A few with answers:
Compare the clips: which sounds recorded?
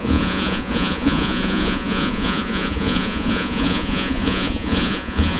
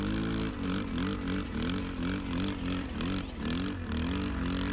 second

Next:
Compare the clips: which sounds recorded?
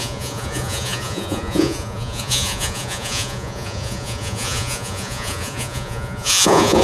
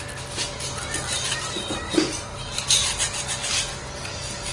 second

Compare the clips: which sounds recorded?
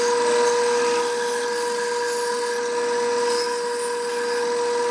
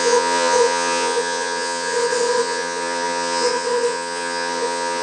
first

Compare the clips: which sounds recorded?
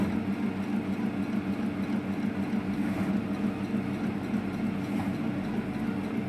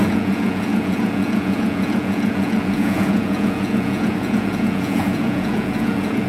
first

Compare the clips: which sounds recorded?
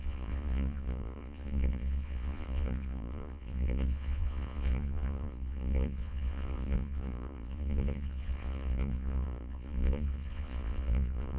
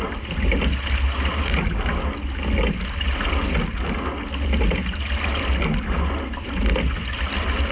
second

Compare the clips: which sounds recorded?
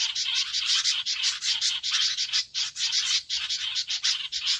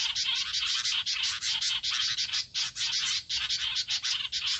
second